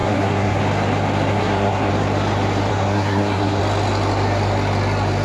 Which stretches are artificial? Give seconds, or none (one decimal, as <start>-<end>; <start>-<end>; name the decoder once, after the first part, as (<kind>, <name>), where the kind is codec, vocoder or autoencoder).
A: 0.0-0.6 (codec, SNAC); 1.3-1.9; 2.7-3.6